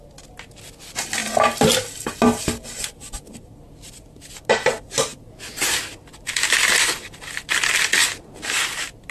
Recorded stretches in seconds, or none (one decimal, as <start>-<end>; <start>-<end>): 0.0-9.1